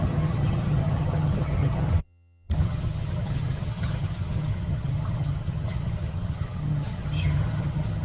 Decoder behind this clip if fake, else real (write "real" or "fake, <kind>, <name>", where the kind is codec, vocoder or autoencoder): fake, vocoder, HiFi-GAN